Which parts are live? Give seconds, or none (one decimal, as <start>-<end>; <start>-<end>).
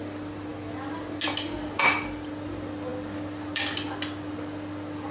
0.0-5.1